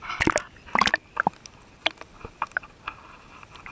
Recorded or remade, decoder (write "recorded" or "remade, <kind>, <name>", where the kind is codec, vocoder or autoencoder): recorded